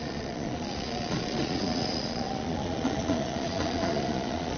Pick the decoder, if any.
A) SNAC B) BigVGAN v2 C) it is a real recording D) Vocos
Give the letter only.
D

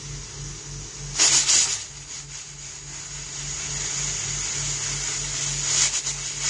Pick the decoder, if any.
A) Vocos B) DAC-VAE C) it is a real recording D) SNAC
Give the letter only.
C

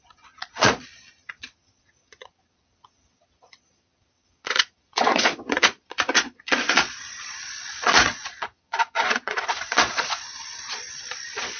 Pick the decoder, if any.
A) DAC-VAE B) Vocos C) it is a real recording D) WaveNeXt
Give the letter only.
B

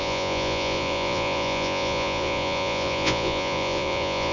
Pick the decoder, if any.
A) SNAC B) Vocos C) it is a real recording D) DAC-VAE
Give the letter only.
B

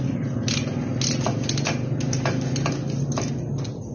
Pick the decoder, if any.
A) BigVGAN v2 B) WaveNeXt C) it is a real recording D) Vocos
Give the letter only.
C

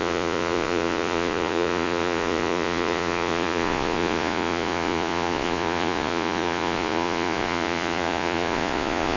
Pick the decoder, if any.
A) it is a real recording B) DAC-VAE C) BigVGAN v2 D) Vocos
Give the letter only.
D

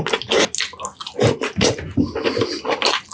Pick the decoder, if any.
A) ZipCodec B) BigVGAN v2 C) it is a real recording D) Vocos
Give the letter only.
C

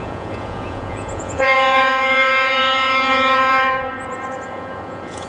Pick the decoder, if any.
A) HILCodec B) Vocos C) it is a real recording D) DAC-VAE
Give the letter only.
B